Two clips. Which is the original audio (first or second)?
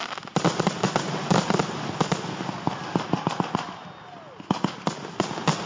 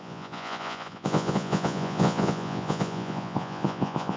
first